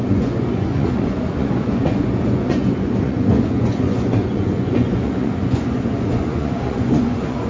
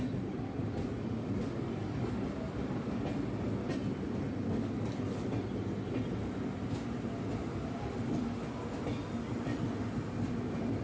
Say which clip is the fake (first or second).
first